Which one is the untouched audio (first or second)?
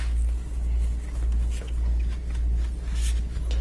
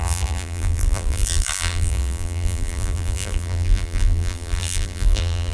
first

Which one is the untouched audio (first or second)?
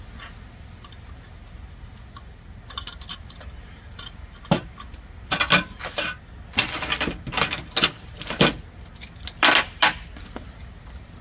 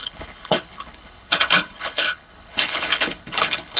first